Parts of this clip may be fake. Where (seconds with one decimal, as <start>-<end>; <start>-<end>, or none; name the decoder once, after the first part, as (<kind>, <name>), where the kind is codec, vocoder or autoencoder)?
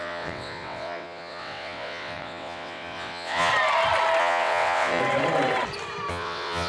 0.0-3.5 (vocoder, WaveNeXt); 4.2-5.0; 6.1-6.7